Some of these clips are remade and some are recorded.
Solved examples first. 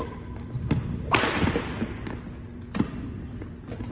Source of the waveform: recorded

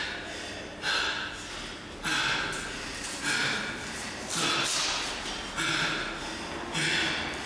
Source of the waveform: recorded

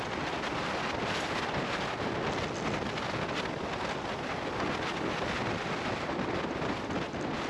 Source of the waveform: recorded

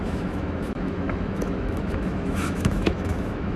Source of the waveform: remade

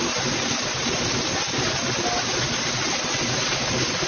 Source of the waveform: recorded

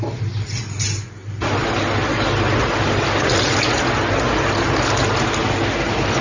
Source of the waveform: recorded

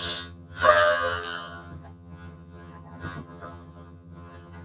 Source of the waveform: remade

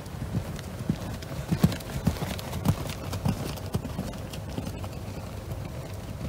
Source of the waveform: recorded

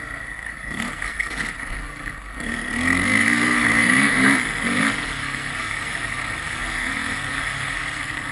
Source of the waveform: remade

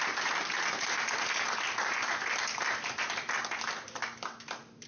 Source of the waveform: recorded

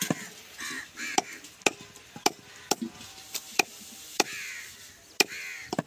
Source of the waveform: recorded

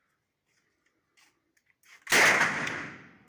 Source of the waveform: recorded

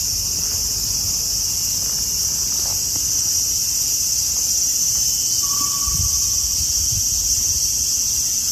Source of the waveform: recorded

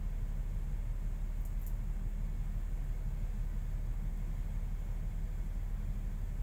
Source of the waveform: recorded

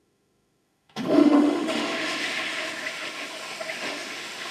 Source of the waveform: remade